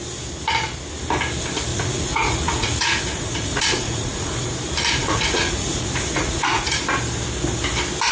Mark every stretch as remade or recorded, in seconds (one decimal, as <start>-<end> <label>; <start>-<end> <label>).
0.0-1.7 recorded; 1.7-4.5 remade; 4.5-5.0 recorded; 5.0-6.8 remade; 6.8-8.1 recorded